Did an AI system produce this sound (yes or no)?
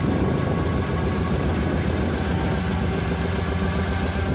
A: no